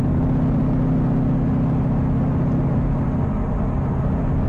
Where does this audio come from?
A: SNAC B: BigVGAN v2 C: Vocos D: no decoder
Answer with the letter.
D